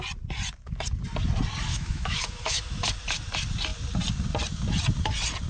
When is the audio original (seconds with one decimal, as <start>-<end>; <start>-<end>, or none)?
0.0-1.7; 2.9-5.5